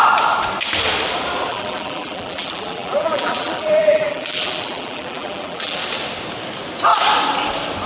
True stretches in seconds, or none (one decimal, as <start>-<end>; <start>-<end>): 0.0-1.5; 5.8-7.9